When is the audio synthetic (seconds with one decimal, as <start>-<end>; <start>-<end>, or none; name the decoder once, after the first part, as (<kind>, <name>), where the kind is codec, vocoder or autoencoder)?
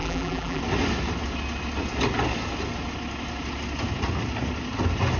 0.0-0.6 (vocoder, BigVGAN v2)